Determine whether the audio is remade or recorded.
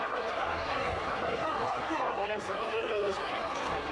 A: remade